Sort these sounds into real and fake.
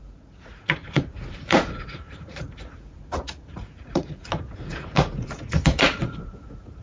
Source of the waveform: fake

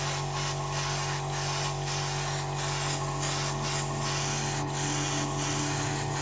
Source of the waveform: real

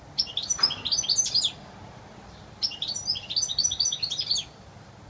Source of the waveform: real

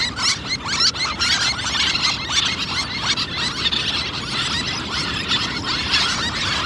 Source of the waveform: real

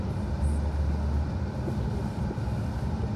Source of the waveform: real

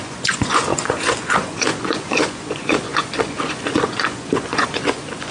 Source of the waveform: fake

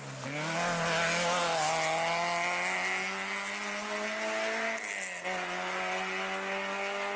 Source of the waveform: real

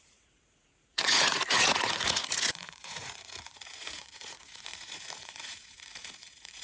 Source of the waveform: fake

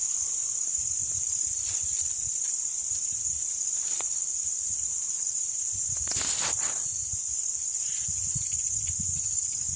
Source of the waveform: real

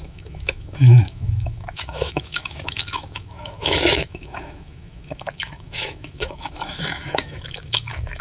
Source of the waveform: fake